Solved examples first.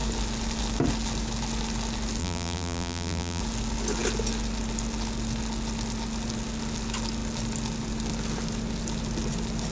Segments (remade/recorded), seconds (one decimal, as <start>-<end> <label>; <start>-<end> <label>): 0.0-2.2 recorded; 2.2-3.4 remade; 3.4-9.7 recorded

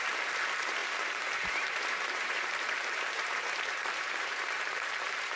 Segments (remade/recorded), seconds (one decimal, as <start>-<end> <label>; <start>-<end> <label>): 0.0-5.4 remade

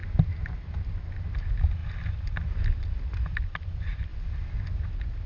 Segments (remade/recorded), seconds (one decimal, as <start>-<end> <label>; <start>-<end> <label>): 0.0-5.3 recorded

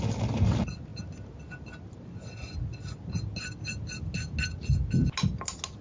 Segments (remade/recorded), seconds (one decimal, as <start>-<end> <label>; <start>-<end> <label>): 0.0-5.8 recorded

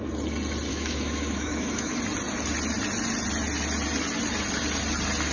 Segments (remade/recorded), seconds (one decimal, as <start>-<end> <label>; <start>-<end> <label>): 0.0-0.7 recorded; 0.7-2.0 remade; 2.0-5.3 recorded